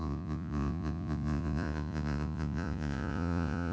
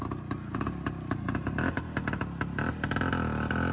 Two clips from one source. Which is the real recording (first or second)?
second